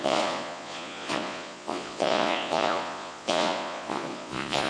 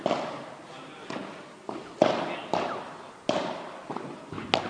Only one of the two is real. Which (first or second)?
second